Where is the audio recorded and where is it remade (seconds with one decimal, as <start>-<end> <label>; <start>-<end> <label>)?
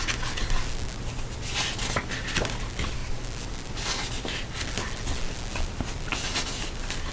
0.0-7.1 recorded